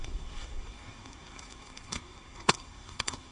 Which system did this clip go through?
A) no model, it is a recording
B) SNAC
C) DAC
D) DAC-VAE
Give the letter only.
B